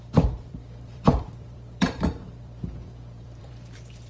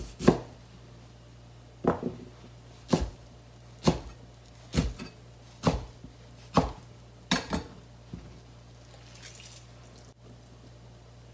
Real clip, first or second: second